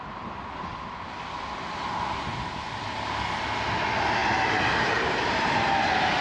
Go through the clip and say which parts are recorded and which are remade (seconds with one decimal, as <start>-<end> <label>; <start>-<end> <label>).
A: 0.0-4.2 recorded; 4.2-6.2 remade